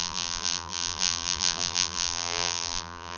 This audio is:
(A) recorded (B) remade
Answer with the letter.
B